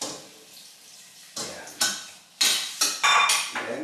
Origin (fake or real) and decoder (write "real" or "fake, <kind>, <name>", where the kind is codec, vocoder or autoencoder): real